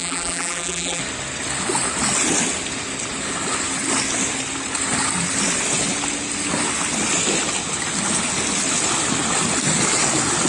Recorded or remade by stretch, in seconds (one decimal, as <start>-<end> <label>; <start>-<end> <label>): 0.0-1.0 remade; 1.0-10.5 recorded